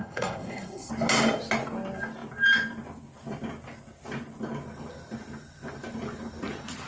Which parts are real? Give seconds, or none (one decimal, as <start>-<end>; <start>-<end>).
0.9-6.9